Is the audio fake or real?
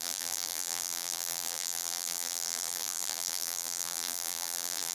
fake